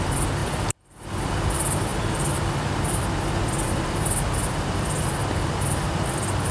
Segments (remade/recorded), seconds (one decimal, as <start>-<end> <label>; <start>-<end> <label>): 0.0-6.5 remade